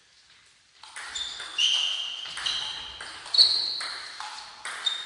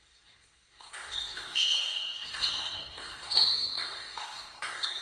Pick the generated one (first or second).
second